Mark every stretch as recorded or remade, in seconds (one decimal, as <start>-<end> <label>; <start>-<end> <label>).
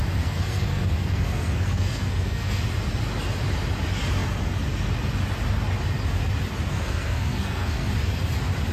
0.0-2.6 remade; 2.6-6.7 recorded; 6.7-7.9 remade; 7.9-8.7 recorded